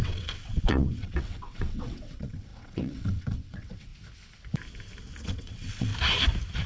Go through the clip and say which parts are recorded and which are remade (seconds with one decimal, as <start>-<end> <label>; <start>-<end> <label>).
0.0-3.9 remade; 3.9-5.2 recorded; 5.2-5.9 remade; 5.9-6.7 recorded